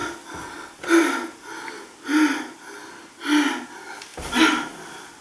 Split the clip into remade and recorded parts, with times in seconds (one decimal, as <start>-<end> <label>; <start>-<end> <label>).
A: 0.0-5.2 recorded